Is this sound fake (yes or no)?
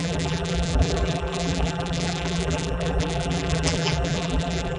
yes